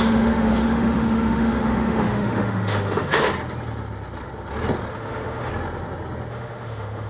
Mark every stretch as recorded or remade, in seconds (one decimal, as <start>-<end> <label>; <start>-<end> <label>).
0.0-3.3 remade; 3.3-4.9 recorded; 4.9-5.5 remade; 5.5-6.3 recorded; 6.3-7.1 remade